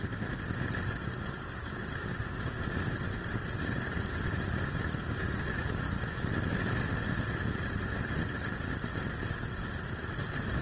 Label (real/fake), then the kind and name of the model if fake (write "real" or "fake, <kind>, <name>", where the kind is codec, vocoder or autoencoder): real